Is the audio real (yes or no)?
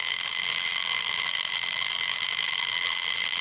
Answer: no